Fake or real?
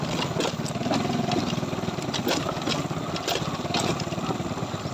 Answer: real